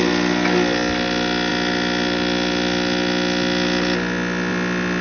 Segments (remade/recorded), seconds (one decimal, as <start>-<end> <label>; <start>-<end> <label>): 0.0-5.0 recorded